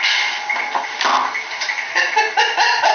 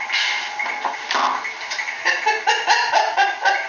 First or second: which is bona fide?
second